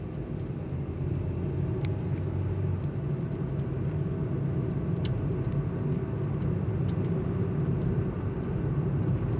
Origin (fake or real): real